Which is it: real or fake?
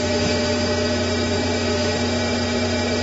fake